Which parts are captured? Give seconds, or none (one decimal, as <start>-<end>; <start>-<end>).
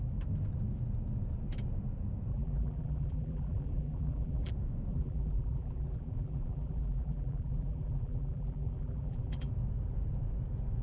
0.0-2.3; 4.5-4.9; 9.5-10.8